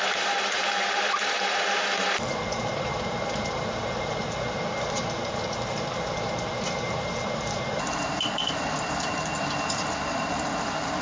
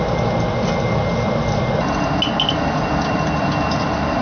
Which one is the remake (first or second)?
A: first